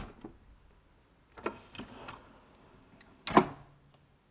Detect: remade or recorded recorded